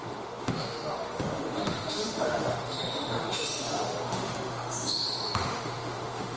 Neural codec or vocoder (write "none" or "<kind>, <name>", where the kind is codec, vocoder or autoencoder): autoencoder, DAC-VAE